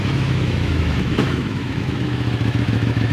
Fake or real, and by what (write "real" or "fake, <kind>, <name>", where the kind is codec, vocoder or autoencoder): fake, autoencoder, DAC-VAE